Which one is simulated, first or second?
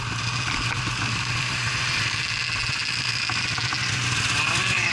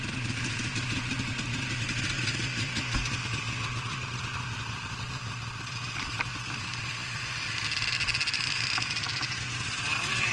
second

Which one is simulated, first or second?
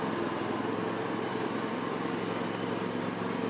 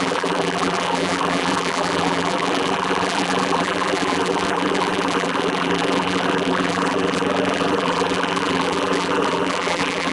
second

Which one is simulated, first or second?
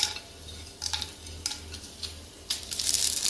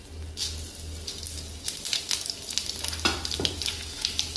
first